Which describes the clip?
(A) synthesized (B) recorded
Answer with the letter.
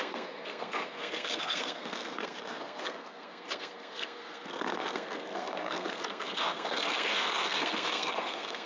A